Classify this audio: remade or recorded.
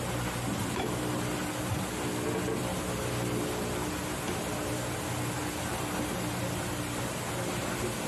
recorded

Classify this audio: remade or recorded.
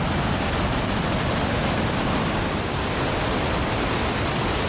recorded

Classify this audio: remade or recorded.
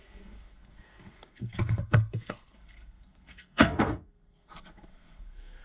remade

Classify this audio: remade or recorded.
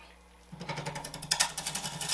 recorded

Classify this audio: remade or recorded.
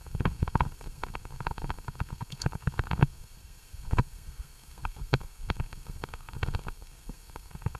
remade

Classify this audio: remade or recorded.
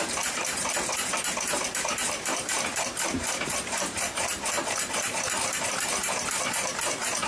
remade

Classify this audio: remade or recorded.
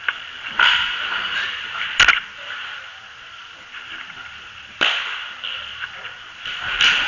recorded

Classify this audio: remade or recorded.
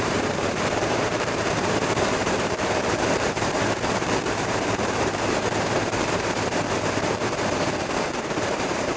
remade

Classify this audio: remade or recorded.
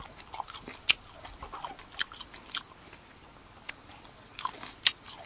recorded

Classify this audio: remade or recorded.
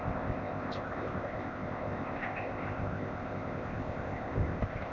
remade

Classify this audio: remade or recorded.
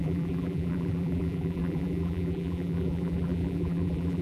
remade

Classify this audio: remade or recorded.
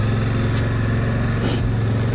recorded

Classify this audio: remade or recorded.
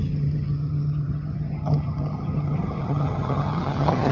remade